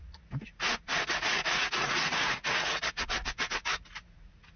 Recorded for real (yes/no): no